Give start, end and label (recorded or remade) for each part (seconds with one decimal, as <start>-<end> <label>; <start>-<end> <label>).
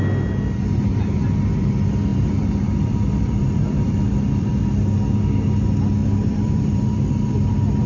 0.0-2.1 recorded; 2.1-4.5 remade; 4.5-6.0 recorded; 6.0-7.5 remade; 7.5-7.9 recorded